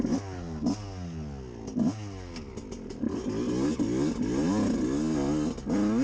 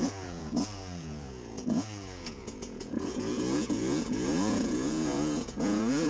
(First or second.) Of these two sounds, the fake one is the second